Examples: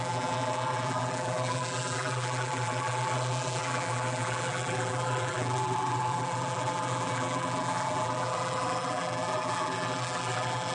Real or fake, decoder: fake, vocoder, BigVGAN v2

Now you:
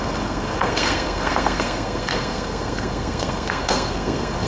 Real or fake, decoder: fake, codec, SNAC